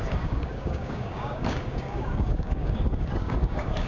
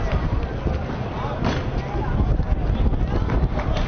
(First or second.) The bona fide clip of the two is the second